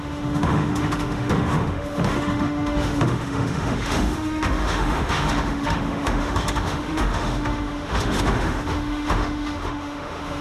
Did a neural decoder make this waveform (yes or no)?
yes